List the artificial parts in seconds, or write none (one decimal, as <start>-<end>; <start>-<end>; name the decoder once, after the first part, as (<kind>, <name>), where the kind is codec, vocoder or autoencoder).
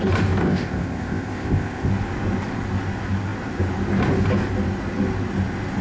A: 0.4-1.9 (codec, ZipCodec)